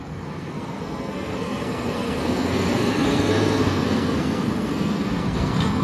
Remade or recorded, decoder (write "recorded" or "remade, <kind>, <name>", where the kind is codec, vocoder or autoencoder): remade, codec, SNAC